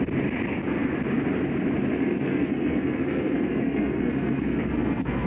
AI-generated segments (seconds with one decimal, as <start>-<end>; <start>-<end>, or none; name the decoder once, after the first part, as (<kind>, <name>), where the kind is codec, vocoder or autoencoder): 1.9-5.3 (codec, SNAC)